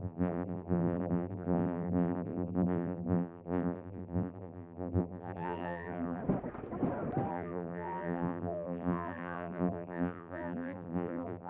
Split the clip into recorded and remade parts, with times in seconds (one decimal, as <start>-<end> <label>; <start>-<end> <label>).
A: 0.0-6.2 remade; 6.2-7.3 recorded; 7.3-11.5 remade